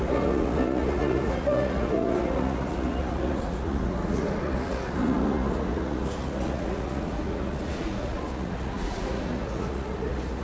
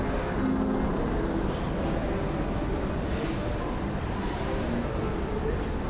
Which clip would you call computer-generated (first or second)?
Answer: first